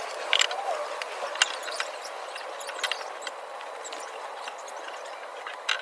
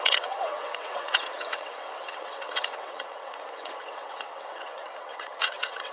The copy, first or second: second